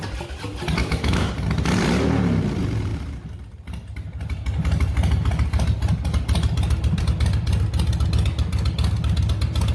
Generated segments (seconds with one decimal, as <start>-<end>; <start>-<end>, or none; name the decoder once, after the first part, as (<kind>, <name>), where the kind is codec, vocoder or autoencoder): 0.8-1.3 (autoencoder, DAC-VAE)

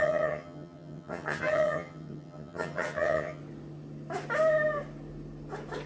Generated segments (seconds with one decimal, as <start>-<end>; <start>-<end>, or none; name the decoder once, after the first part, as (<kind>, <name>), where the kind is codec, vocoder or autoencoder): 0.0-3.4 (vocoder, HiFi-GAN)

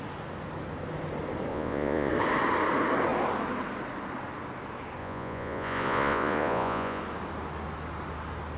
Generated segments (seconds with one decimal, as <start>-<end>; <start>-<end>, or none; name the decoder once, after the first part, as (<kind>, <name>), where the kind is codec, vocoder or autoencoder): 1.5-2.1 (vocoder, Vocos); 5.0-7.0

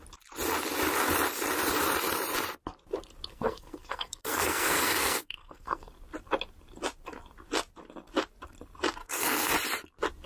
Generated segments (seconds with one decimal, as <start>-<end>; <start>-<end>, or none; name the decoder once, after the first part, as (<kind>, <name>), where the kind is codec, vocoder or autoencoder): 3.3-5.9 (codec, SNAC); 9.0-9.5

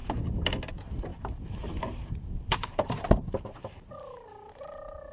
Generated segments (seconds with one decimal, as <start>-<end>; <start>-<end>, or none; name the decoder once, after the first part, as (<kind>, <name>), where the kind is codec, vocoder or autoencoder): 1.1-3.3 (vocoder, BigVGAN v2)

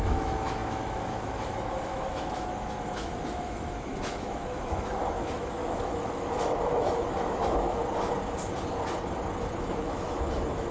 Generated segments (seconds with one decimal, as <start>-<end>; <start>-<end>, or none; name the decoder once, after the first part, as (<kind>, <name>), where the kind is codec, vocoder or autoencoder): 0.0-7.8 (autoencoder, DAC-VAE); 9.6-10.7

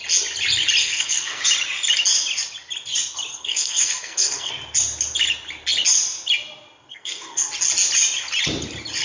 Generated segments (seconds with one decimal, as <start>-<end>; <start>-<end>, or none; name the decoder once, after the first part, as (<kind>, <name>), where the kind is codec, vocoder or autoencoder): 0.8-1.4 (codec, SNAC); 3.3-4.5; 6.9-7.5

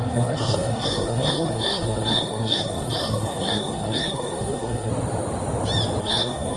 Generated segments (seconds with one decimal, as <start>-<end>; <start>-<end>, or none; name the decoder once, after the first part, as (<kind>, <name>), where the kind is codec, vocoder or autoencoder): 0.0-4.9 (codec, SNAC); 6.0-6.6